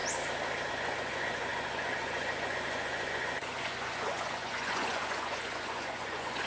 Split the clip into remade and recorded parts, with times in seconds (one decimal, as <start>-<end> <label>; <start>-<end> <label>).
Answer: 0.0-0.7 recorded; 0.7-6.5 remade